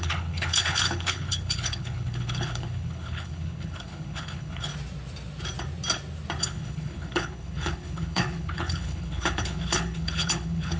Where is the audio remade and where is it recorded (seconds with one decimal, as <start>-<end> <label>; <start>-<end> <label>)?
0.0-4.7 remade; 4.7-6.4 recorded; 6.4-10.8 remade